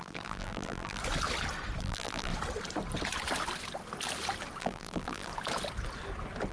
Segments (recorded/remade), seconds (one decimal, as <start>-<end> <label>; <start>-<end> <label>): 0.0-1.0 remade; 1.0-1.8 recorded; 1.8-2.3 remade; 2.3-4.6 recorded; 4.6-5.3 remade; 5.3-6.5 recorded

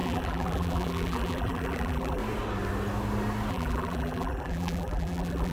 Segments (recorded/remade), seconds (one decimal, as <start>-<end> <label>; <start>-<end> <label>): 0.0-2.2 remade; 2.2-3.5 recorded; 3.5-5.5 remade

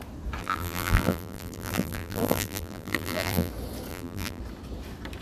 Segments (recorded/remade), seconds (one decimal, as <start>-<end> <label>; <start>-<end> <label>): 0.0-0.4 recorded; 0.4-3.5 remade; 3.5-3.9 recorded; 3.9-4.4 remade; 4.4-5.2 recorded

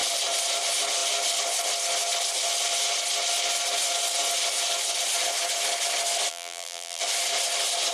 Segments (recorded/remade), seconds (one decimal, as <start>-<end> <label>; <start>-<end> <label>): 0.0-6.3 recorded; 6.3-7.0 remade; 7.0-7.9 recorded

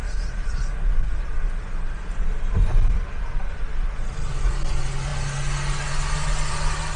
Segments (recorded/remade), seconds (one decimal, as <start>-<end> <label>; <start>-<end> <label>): 0.0-0.7 remade; 0.7-7.0 recorded

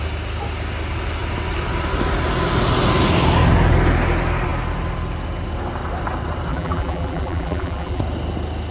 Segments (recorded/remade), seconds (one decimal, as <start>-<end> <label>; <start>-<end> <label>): 0.0-6.5 recorded; 6.5-8.0 remade; 8.0-8.7 recorded